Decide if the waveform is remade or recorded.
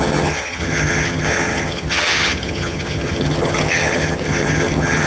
remade